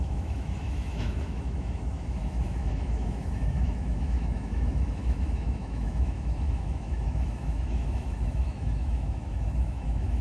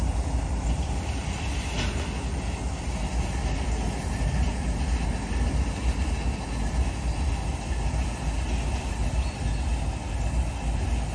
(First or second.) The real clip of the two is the second